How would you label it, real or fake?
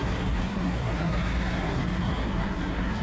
fake